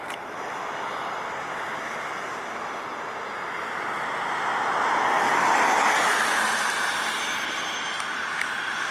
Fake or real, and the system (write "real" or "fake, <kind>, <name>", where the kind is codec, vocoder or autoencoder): real